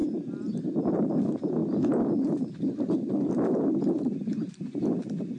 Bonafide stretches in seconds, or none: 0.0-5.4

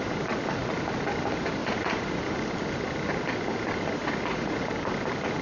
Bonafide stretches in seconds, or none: 0.0-1.6; 2.3-4.0; 4.7-5.4

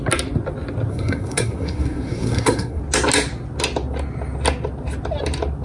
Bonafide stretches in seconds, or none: 0.0-0.9; 2.8-5.6